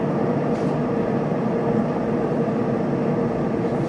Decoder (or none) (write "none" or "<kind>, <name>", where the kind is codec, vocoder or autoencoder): none